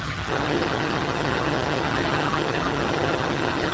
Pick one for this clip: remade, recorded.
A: remade